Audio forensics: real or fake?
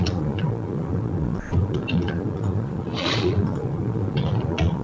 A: fake